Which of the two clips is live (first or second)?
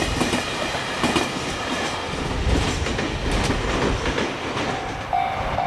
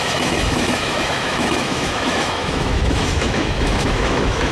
first